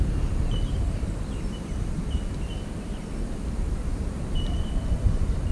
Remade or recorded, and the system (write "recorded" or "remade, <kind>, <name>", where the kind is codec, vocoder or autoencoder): recorded